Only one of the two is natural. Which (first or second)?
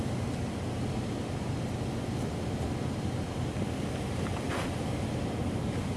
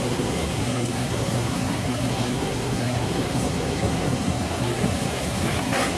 first